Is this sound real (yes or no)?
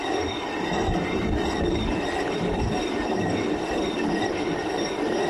no